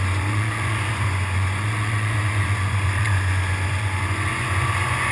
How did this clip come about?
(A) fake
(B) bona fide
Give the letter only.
A